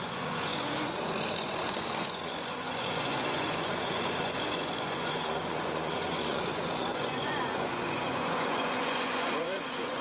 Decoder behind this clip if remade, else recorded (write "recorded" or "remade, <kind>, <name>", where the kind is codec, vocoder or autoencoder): remade, vocoder, Vocos